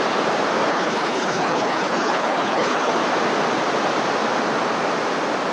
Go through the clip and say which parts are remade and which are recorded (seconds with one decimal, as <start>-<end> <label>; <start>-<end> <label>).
0.0-0.7 recorded; 0.7-2.9 remade; 2.9-5.5 recorded